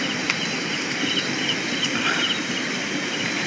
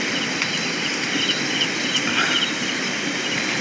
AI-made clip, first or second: first